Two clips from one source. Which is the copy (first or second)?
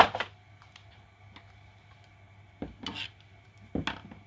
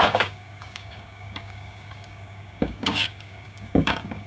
second